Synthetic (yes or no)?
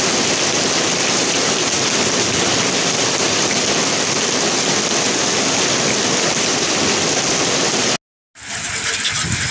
no